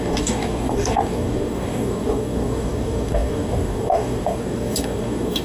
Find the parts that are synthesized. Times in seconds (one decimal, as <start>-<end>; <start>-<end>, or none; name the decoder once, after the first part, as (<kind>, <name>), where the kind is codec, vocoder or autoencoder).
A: 0.0-5.4 (codec, DAC)